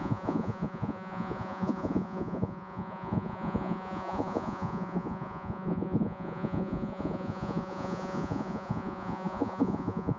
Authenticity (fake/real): fake